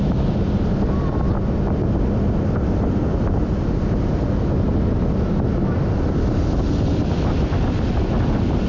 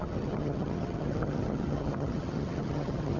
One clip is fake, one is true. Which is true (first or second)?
first